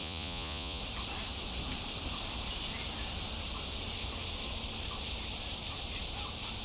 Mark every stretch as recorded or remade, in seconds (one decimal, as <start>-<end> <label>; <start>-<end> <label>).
0.0-0.8 remade; 0.8-6.6 recorded

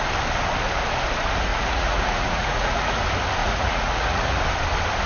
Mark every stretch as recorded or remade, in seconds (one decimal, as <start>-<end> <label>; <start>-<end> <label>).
0.0-1.5 recorded; 1.5-3.0 remade; 3.0-3.4 recorded; 3.4-4.4 remade; 4.4-5.1 recorded

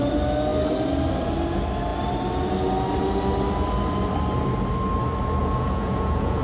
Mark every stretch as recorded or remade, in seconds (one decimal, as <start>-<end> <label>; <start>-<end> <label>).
0.0-5.4 recorded; 5.4-6.4 remade

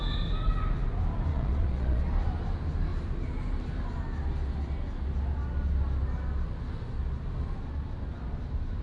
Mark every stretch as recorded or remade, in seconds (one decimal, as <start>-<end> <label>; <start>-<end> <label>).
0.0-1.3 recorded; 1.3-2.0 remade; 2.0-8.8 recorded

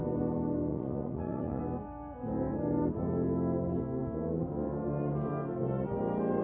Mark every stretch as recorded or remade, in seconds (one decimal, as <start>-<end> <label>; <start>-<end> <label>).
0.0-0.7 recorded; 0.7-1.6 remade; 1.6-6.4 recorded